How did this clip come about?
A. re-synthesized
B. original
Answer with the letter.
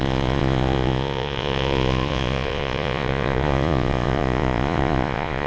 A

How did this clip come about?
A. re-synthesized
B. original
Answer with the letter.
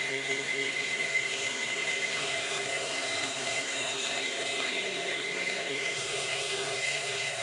A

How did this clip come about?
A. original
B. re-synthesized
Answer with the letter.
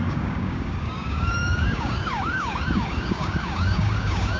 B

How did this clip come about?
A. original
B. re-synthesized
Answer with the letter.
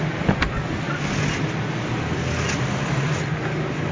A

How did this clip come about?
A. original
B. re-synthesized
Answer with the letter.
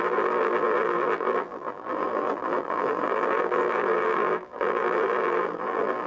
B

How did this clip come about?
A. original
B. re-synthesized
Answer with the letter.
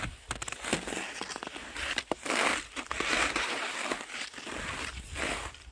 A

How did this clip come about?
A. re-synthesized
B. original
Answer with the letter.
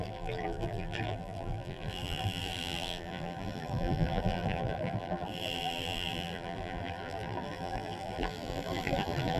A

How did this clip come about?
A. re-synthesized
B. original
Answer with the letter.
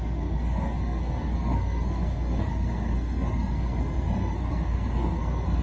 A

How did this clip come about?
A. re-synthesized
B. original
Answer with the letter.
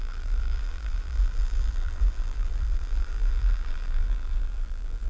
A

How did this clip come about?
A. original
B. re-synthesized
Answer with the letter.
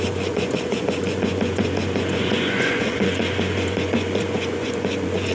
B